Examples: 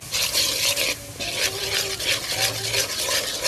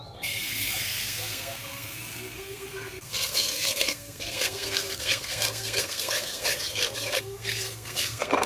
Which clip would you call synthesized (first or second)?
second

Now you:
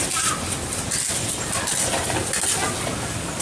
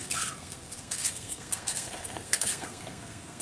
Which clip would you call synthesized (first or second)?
second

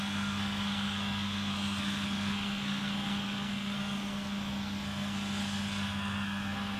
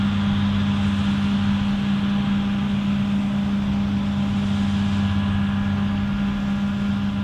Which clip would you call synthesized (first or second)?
first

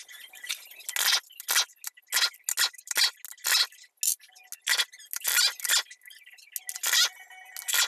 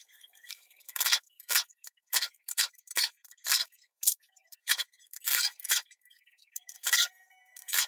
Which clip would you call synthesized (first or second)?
second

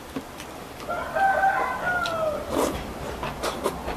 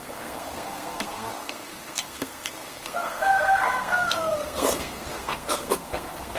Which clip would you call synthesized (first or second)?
second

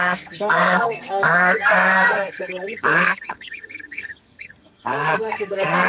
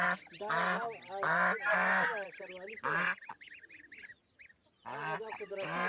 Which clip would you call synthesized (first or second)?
first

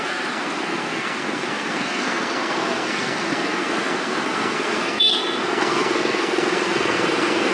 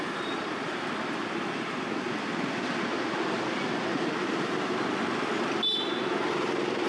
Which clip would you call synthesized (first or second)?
first